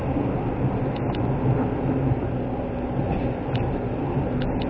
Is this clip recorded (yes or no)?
yes